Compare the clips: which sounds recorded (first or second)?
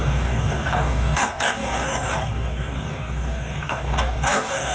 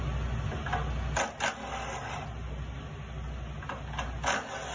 second